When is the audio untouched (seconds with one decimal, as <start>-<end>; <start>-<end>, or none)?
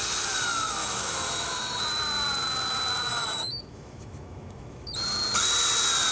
0.0-0.8; 1.8-3.1; 4.9-6.1